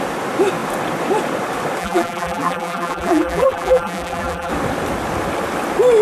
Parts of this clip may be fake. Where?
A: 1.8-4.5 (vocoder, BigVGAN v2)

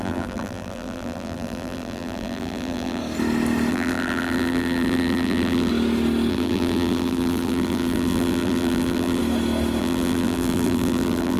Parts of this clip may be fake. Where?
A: 0.0-3.0 (vocoder, BigVGAN v2); 3.7-5.7; 6.3-9.2; 9.8-11.4

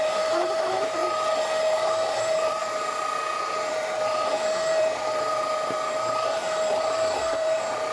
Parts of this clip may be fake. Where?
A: 0.0-1.0 (vocoder, BigVGAN v2); 2.2-2.6; 3.7-7.9

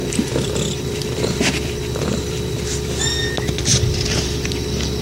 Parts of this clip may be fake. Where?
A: 0.0-3.0 (vocoder, BigVGAN v2); 3.7-4.2

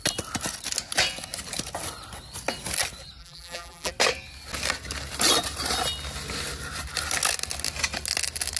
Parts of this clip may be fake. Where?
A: 3.2-3.9 (vocoder, BigVGAN v2)

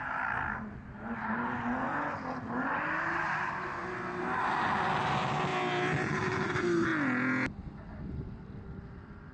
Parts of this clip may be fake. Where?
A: none

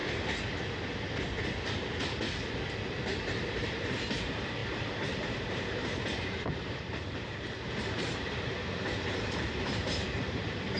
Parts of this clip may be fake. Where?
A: 2.9-10.8 (vocoder, BigVGAN v2)